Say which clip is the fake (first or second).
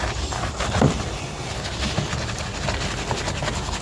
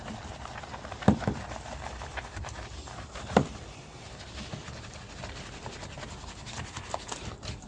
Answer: second